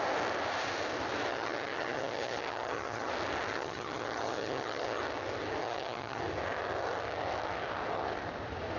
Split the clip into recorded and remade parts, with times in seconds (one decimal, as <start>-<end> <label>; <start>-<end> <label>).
0.0-1.3 recorded; 1.3-3.1 remade; 3.1-3.5 recorded; 3.5-5.0 remade; 5.0-5.6 recorded; 5.6-6.2 remade; 6.2-8.8 recorded